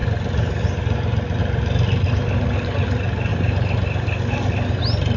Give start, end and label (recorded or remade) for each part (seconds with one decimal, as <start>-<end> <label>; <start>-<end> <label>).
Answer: 0.0-5.2 recorded